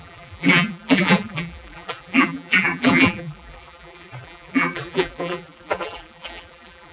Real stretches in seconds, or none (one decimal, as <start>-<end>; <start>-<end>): none